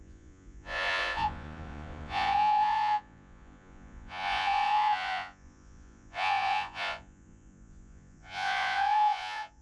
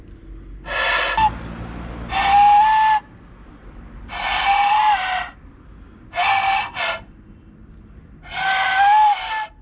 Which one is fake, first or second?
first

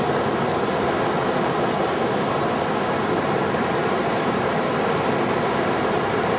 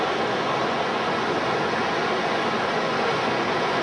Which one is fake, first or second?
second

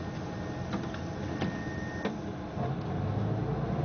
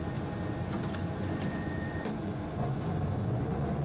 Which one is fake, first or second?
second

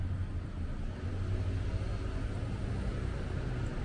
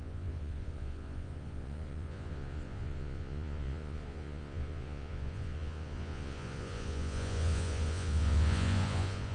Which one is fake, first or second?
second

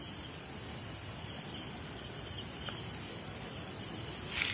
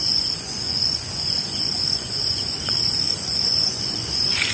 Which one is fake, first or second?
second